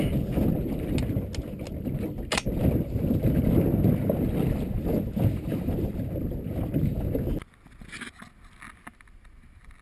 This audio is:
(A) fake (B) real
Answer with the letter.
B